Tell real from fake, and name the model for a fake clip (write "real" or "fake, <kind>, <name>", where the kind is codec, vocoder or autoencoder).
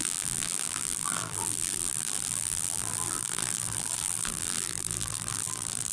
fake, vocoder, BigVGAN v2